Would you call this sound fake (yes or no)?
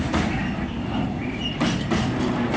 no